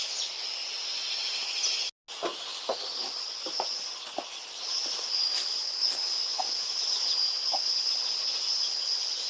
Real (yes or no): yes